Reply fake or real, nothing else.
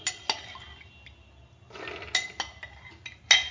real